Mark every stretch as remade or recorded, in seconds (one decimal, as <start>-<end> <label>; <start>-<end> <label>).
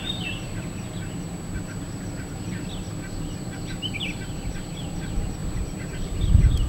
0.0-6.7 recorded